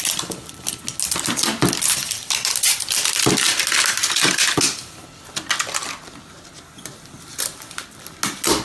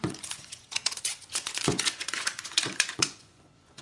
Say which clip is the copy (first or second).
second